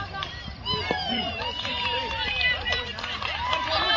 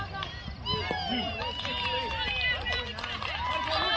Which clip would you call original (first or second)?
second